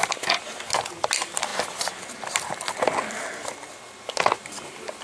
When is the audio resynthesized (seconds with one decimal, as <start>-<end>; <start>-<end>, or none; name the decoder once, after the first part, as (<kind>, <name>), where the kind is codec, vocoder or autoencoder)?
none